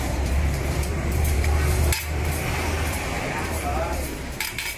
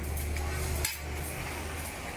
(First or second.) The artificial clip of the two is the first